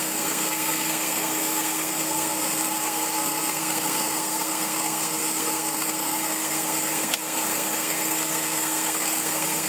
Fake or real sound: fake